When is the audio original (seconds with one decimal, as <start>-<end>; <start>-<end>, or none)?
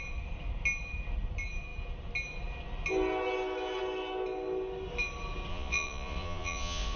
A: 0.0-5.5